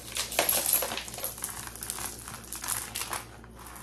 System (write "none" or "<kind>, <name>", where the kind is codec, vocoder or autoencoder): none